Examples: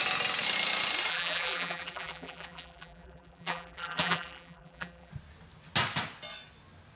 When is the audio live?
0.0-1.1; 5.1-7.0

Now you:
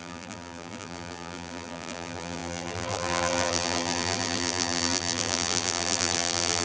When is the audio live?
none

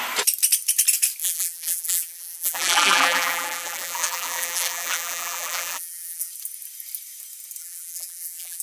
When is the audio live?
0.0-1.2; 6.3-7.6